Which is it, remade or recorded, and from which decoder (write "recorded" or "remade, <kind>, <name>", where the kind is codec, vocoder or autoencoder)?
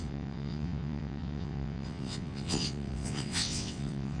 remade, vocoder, WaveNeXt